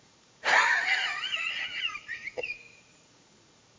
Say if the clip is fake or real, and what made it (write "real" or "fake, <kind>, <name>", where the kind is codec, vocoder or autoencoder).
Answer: fake, vocoder, Vocos